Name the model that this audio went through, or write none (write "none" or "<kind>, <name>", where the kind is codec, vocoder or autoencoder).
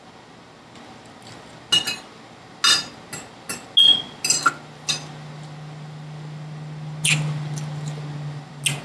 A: none